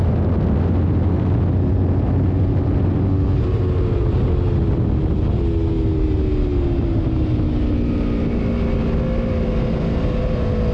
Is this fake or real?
real